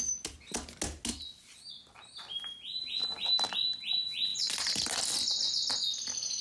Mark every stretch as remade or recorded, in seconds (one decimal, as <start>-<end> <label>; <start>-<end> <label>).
0.0-1.1 recorded; 1.1-2.8 remade; 2.8-4.3 recorded; 4.3-6.4 remade